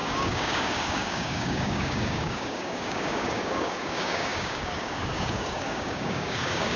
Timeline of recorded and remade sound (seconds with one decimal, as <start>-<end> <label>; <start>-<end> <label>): 0.0-6.8 remade

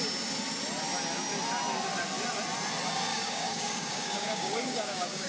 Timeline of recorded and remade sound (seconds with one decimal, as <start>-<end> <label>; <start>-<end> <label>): 0.0-3.1 recorded; 3.1-5.3 remade

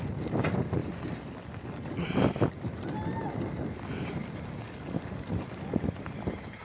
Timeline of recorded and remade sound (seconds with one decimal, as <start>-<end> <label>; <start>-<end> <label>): 0.0-6.6 recorded

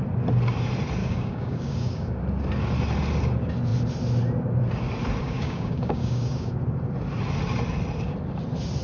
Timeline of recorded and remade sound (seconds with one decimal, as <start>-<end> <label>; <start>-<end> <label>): 0.0-1.0 recorded; 1.0-2.2 remade; 2.2-5.2 recorded; 5.2-6.5 remade; 6.5-8.8 recorded

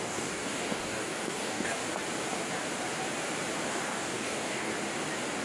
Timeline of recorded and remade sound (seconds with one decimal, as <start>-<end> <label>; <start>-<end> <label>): 0.0-1.8 remade; 1.8-3.7 recorded; 3.7-4.7 remade; 4.7-5.4 recorded

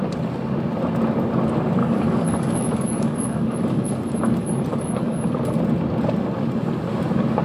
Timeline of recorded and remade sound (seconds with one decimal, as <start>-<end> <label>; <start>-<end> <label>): 0.0-1.8 recorded; 1.8-3.9 remade; 3.9-4.7 recorded; 4.7-5.4 remade; 5.4-7.4 recorded

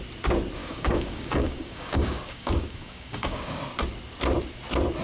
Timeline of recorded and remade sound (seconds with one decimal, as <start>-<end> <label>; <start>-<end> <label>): 0.0-0.6 recorded; 0.6-3.6 remade; 3.6-5.0 recorded